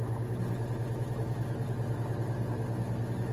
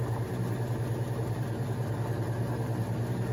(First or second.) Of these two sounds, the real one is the first